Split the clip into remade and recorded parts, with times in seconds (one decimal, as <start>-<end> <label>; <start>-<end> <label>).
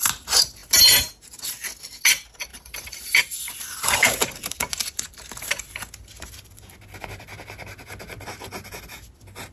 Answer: 0.0-2.5 recorded; 2.5-3.6 remade; 3.6-9.5 recorded